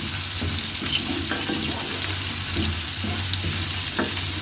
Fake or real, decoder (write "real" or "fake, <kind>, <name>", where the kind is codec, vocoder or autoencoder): real